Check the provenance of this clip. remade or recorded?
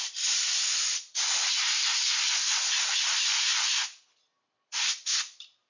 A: remade